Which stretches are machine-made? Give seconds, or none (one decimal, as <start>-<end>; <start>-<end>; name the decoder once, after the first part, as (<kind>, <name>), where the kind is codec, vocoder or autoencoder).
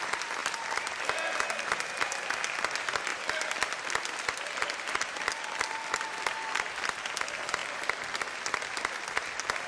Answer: 3.1-6.7 (vocoder, BigVGAN v2); 7.6-8.6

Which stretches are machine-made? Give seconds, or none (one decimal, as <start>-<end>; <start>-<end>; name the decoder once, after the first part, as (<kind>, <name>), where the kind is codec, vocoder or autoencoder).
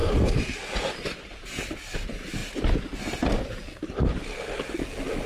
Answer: 0.0-1.4 (vocoder, BigVGAN v2)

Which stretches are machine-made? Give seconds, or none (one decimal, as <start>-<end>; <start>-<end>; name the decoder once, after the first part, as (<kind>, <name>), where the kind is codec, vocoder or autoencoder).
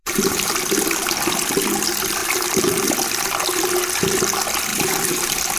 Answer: 0.0-0.6 (vocoder, BigVGAN v2); 2.2-2.8; 4.7-5.6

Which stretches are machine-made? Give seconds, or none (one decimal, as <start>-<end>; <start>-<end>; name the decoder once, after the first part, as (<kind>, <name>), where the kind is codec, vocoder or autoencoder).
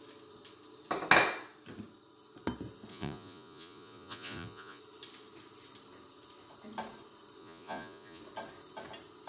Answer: 2.9-4.8 (vocoder, Vocos); 7.4-8.2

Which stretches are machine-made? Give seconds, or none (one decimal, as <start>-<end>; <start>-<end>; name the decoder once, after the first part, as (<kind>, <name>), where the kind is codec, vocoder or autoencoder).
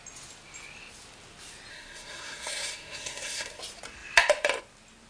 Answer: 1.7-3.6 (codec, SNAC)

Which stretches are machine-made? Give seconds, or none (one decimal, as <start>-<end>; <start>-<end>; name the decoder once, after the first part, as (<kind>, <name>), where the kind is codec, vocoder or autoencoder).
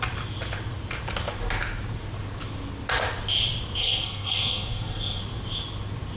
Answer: 3.8-5.2 (codec, SNAC)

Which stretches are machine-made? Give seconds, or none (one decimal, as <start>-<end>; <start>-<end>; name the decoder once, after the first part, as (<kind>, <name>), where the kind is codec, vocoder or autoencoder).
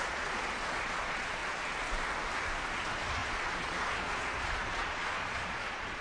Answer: 0.0-1.4 (vocoder, Vocos); 2.7-6.0